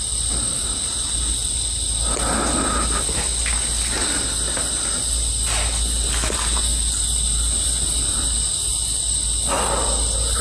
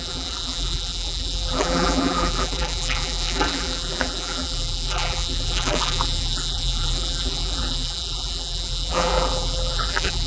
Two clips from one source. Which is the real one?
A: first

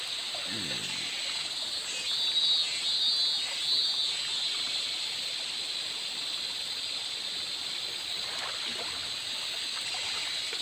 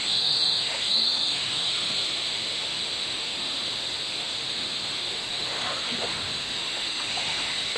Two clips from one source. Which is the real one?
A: first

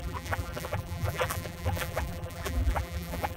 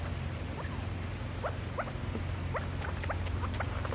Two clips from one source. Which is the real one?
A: second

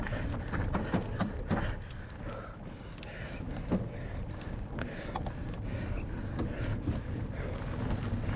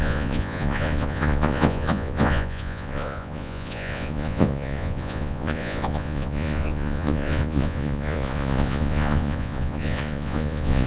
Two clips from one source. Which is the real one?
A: first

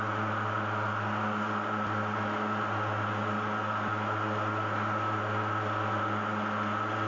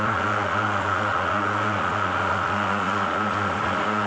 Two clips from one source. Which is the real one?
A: first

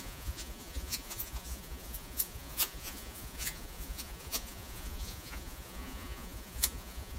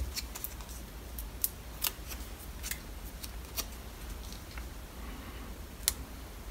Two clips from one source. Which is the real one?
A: second